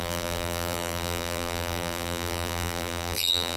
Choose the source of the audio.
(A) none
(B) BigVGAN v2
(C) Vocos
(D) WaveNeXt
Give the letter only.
B